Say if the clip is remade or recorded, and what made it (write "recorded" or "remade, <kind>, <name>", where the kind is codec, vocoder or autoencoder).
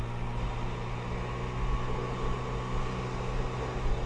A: recorded